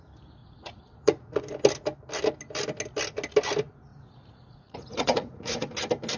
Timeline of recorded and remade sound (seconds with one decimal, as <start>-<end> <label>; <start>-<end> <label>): 0.0-0.4 recorded; 0.4-1.4 remade; 1.4-3.9 recorded; 3.9-5.7 remade; 5.7-6.2 recorded